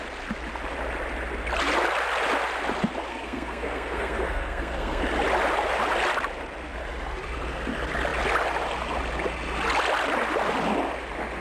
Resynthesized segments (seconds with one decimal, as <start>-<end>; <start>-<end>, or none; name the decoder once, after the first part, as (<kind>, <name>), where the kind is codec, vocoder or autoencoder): 3.1-5.0 (codec, SNAC)